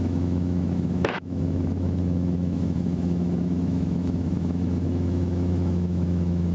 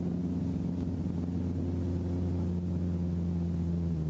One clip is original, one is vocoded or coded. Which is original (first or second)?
second